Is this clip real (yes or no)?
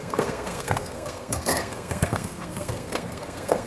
no